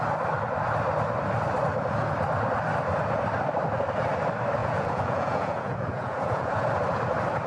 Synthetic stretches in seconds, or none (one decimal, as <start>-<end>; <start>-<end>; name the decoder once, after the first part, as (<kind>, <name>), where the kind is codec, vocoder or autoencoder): 4.6-6.7 (vocoder, Vocos)